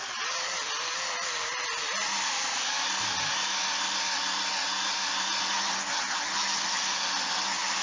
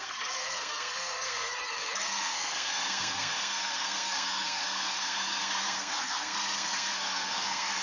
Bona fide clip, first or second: first